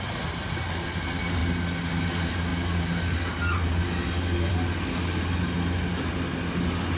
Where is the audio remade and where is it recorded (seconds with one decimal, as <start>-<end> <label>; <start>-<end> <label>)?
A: 0.0-7.0 recorded